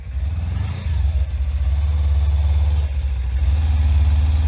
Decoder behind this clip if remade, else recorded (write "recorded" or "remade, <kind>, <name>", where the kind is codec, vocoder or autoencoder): recorded